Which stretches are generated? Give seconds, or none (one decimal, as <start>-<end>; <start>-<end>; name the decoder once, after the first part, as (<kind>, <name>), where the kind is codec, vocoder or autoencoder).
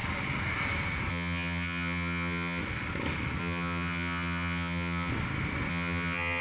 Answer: 1.1-2.6 (vocoder, HiFi-GAN); 3.4-5.1; 5.7-6.4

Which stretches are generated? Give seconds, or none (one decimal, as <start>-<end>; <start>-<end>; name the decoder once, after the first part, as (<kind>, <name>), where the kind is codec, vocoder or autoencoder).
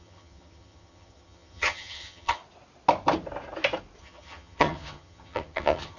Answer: 0.0-2.4 (vocoder, HiFi-GAN); 4.0-6.0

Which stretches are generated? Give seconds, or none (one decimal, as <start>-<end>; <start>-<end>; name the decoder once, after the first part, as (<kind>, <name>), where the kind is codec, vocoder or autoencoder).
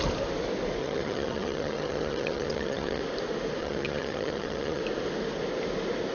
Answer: 0.8-3.0 (vocoder, HiFi-GAN); 3.6-4.8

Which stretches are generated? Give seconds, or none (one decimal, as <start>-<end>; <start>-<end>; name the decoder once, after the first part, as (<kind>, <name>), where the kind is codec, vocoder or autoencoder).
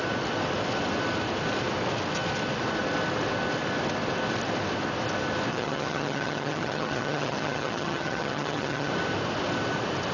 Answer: 5.5-8.9 (vocoder, HiFi-GAN)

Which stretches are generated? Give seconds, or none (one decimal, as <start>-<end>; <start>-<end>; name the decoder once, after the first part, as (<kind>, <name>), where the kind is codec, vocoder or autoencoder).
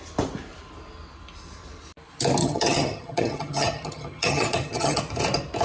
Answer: 2.4-5.0 (vocoder, HiFi-GAN)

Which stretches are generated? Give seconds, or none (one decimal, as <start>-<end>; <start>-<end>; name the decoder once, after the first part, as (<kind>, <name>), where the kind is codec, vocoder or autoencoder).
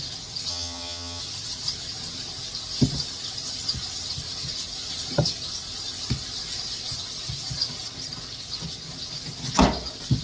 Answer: 0.5-1.2 (vocoder, HiFi-GAN)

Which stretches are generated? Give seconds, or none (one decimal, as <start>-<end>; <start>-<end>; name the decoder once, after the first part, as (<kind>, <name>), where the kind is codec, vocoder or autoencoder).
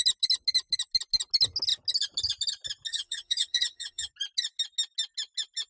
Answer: 2.9-4.1 (vocoder, HiFi-GAN)